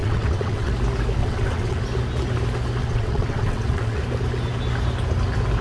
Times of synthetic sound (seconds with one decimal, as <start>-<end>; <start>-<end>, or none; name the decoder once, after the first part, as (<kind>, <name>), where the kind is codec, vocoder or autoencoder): 0.0-0.7 (vocoder, WaveNeXt); 1.2-1.8; 2.8-4.0